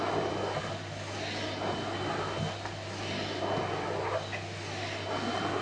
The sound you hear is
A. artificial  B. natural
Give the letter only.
B